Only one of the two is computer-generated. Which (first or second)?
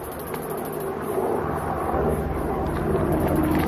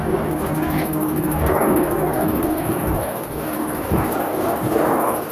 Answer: second